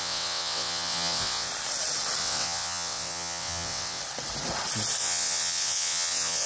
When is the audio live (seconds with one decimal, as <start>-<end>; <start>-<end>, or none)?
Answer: 1.5-2.2; 4.0-5.0